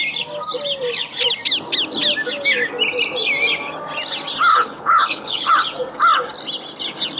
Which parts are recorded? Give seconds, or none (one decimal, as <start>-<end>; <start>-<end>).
0.0-4.5; 5.5-7.2

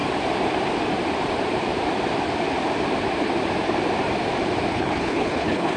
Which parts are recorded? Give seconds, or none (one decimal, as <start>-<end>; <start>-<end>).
0.0-4.7

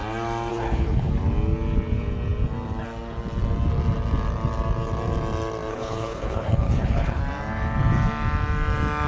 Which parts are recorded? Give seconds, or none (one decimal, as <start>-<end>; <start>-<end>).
0.0-0.5; 1.1-5.7; 7.2-9.1

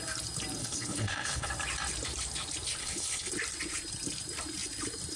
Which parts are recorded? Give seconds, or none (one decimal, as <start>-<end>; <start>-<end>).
0.0-0.6; 1.5-2.8; 3.3-5.2

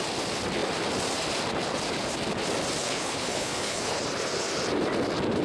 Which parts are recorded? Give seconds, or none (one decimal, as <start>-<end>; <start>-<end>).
0.0-2.8; 4.0-5.4

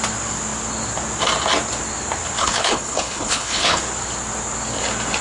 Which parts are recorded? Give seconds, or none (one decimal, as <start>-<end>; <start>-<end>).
0.0-2.4; 3.8-5.2